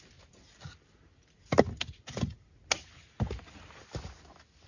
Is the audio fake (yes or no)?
no